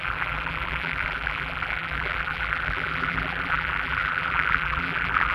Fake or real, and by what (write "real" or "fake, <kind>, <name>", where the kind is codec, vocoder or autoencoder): fake, vocoder, BigVGAN v2